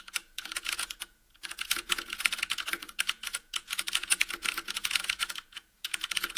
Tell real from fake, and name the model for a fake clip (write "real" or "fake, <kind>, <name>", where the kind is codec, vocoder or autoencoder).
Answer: fake, vocoder, Vocos